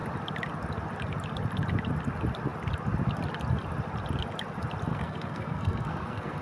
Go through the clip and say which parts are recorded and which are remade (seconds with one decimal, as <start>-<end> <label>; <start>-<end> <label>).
0.0-4.9 recorded; 4.9-6.4 remade